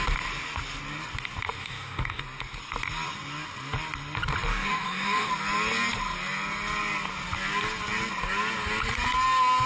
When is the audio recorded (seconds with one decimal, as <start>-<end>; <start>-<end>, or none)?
0.0-1.6; 2.2-4.5; 5.3-9.7